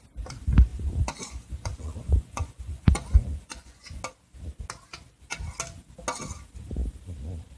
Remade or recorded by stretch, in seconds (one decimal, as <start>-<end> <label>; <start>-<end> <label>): 0.0-0.7 recorded; 0.7-4.0 remade; 4.0-7.6 recorded